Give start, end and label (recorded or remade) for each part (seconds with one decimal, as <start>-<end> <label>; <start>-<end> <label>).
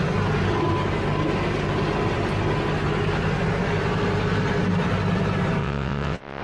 0.0-5.6 recorded; 5.6-6.4 remade